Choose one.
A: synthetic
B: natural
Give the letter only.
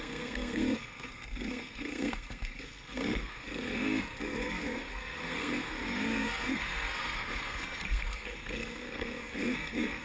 A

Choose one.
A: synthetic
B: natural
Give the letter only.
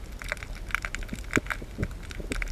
B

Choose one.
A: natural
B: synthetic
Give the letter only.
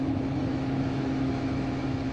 B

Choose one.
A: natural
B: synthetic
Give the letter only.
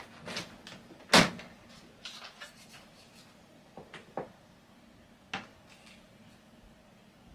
A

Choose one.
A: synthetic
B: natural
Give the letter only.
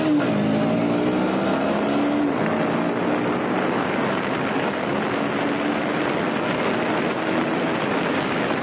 B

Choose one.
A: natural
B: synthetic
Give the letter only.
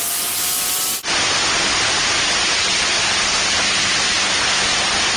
A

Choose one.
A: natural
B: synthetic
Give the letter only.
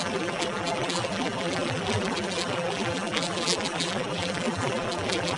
B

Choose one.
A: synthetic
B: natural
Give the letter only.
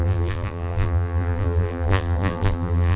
A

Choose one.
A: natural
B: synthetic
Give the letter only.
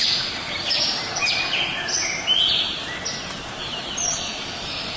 A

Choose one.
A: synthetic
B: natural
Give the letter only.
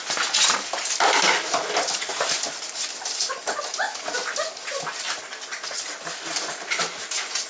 B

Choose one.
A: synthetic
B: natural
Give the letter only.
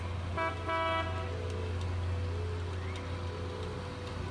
B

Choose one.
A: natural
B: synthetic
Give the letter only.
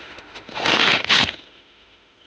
B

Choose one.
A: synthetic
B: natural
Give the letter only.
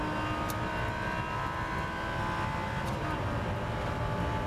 B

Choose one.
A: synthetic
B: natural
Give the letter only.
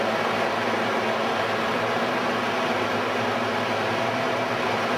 B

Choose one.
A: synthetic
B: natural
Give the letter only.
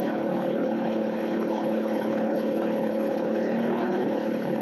A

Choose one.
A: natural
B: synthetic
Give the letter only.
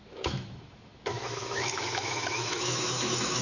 B